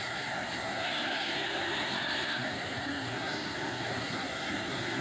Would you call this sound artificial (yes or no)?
yes